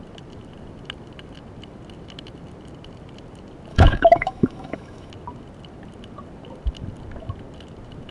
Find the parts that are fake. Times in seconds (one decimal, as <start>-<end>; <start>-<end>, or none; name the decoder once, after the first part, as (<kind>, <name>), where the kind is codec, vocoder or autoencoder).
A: 3.7-5.1 (autoencoder, DAC-VAE)